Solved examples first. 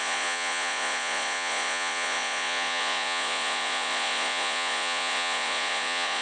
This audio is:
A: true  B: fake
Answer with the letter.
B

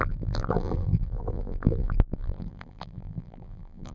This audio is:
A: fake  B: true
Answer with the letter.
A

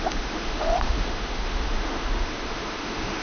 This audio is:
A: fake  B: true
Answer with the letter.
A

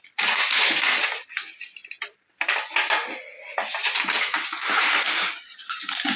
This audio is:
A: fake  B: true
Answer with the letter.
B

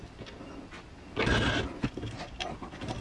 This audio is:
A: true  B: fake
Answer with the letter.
A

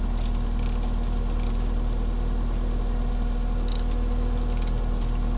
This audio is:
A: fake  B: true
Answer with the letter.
B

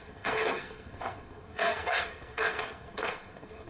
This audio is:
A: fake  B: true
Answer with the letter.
A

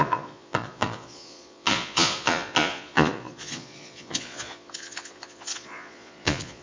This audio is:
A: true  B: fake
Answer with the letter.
B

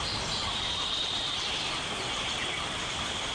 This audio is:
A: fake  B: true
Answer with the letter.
B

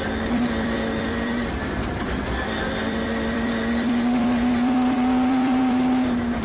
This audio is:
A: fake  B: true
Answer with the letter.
A